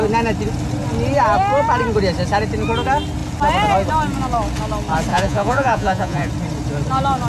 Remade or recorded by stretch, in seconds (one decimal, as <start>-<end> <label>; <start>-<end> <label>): 0.0-5.1 recorded; 5.1-6.3 remade; 6.3-7.3 recorded